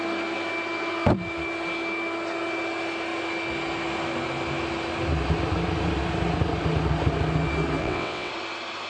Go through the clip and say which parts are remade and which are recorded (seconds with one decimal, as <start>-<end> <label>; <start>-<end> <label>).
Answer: 0.0-7.8 recorded; 7.8-8.3 remade; 8.3-8.9 recorded